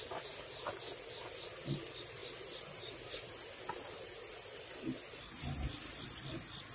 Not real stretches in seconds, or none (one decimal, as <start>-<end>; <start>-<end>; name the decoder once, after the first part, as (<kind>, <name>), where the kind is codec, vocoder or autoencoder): none